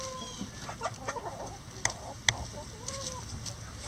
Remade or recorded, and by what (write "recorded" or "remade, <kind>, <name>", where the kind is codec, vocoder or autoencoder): recorded